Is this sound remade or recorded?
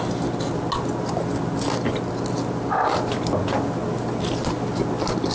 recorded